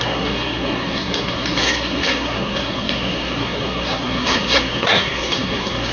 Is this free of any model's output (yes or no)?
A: no